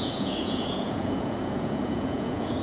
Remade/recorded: remade